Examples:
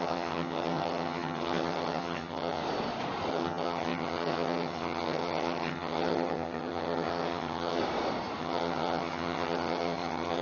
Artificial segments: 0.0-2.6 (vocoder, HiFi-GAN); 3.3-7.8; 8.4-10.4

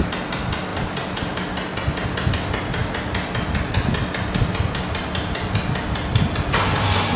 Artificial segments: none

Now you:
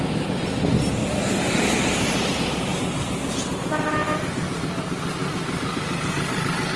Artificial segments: 1.0-2.3 (vocoder, BigVGAN v2); 4.0-4.6; 5.2-6.1